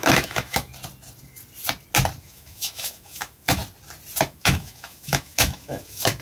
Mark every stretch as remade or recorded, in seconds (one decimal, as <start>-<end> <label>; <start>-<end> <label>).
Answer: 0.0-0.7 remade; 0.7-2.2 recorded; 2.2-3.6 remade; 3.6-4.2 recorded; 4.2-6.2 remade